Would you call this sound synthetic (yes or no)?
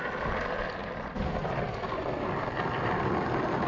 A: no